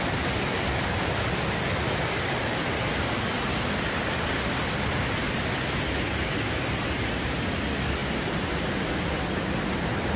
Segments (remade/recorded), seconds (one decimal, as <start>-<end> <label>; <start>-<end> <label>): 0.0-10.2 recorded